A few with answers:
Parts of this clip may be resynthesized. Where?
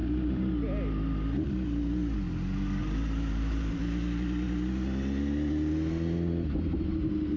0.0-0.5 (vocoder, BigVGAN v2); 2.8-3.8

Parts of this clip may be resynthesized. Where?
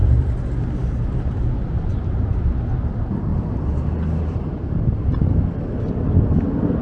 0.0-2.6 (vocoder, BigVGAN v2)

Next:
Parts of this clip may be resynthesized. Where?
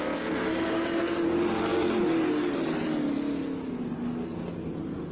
none